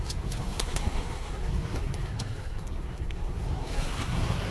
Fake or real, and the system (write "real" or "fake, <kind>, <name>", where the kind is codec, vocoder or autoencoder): fake, codec, SNAC